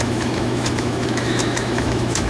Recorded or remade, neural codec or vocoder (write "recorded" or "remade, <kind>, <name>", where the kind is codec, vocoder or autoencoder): remade, autoencoder, DAC-VAE